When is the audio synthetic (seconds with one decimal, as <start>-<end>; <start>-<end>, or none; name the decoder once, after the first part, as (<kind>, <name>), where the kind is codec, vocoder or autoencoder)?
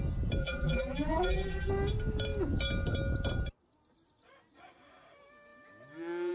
0.4-1.7 (vocoder, BigVGAN v2)